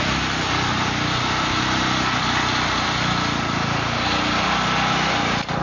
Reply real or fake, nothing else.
real